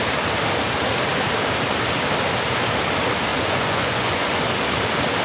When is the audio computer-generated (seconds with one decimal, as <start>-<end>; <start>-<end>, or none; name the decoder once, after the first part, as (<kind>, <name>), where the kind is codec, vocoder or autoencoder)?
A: 3.3-4.4 (vocoder, Vocos)